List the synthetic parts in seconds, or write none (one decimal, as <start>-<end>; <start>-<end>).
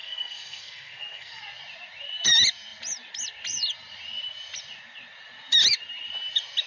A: 0.0-1.4